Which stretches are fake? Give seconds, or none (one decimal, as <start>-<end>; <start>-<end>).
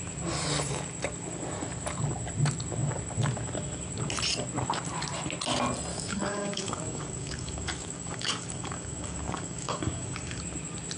5.9-10.4